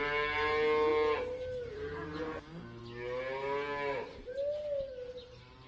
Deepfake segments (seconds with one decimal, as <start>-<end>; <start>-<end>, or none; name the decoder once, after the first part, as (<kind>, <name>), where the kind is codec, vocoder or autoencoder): none